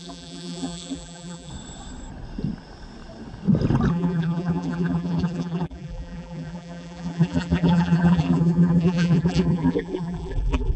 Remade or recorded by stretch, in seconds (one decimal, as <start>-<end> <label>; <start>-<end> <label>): 0.0-1.5 remade; 1.5-3.9 recorded; 3.9-10.8 remade